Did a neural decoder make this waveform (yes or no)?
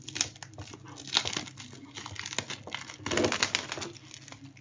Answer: no